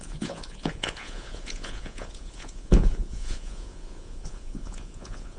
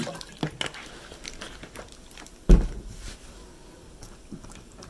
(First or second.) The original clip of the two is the second